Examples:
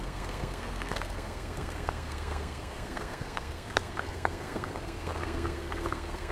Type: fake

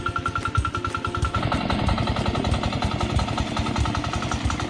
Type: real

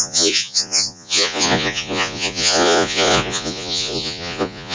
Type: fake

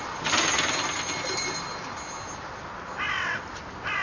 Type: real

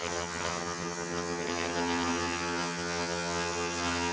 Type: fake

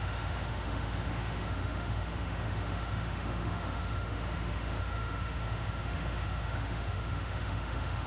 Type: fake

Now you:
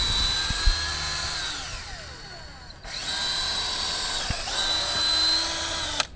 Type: real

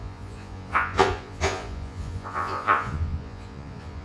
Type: fake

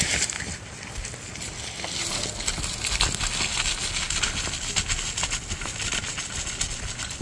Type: real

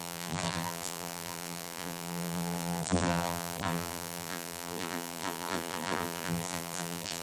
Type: fake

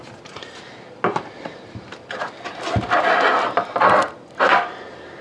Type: real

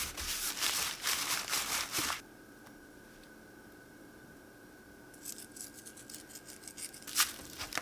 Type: real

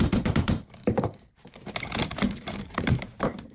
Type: fake